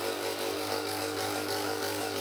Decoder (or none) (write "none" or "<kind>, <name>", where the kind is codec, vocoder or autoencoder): codec, DAC